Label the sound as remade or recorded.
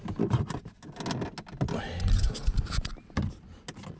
recorded